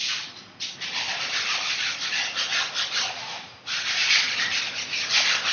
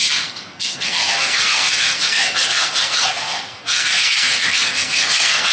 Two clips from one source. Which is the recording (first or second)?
first